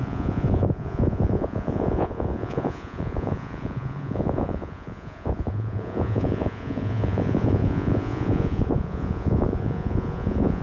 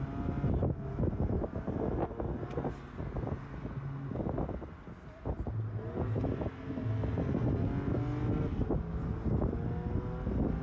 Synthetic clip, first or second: first